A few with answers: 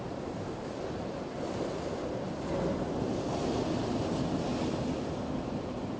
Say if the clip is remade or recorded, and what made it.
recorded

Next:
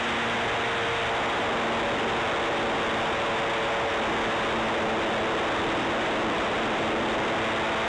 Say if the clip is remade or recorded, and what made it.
recorded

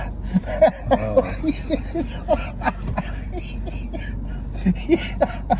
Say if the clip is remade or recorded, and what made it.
recorded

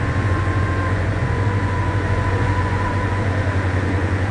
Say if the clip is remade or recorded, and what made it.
remade, vocoder, Vocos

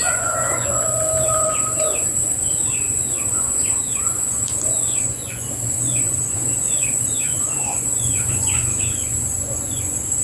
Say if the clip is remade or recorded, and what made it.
remade, vocoder, Vocos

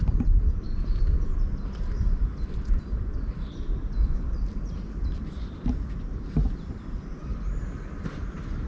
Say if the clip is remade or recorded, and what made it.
recorded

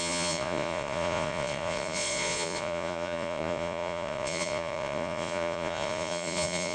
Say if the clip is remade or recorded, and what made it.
remade, vocoder, Vocos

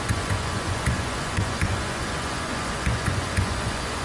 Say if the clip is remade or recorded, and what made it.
remade, vocoder, Vocos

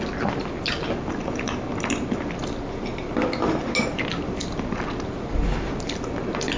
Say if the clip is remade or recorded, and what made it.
recorded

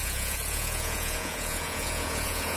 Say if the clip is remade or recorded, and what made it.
remade, vocoder, Vocos